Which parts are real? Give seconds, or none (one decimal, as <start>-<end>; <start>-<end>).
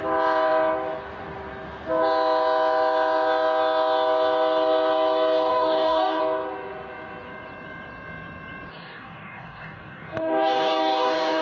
0.0-5.5; 6.2-8.7